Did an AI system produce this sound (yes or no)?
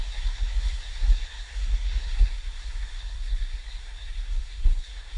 yes